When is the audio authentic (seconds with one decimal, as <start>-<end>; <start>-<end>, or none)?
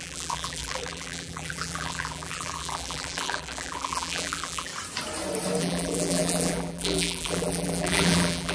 4.7-5.6